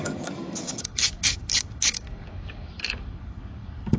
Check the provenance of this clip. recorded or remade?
remade